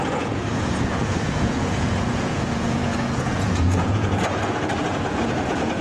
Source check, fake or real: fake